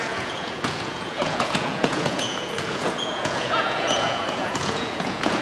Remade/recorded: remade